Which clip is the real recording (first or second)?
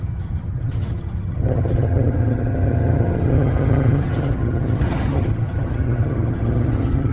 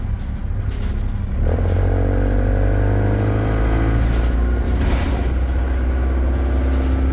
second